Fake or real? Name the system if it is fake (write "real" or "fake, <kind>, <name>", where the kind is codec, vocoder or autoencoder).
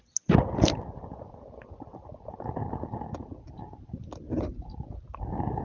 real